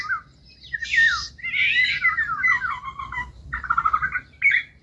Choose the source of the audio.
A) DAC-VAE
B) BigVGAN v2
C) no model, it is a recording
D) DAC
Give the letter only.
C